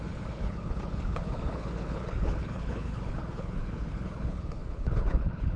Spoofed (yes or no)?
yes